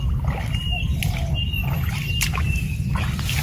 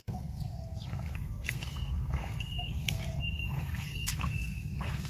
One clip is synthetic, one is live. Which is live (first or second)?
first